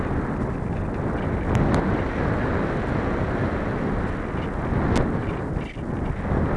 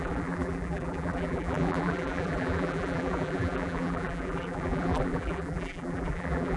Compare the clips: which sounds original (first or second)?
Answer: first